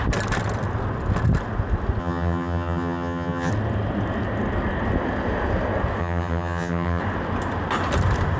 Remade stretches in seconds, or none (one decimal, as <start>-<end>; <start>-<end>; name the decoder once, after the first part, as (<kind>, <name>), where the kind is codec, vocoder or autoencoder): 2.0-3.5 (vocoder, HiFi-GAN); 6.0-7.0